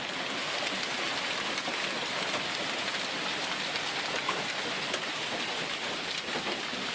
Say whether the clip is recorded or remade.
recorded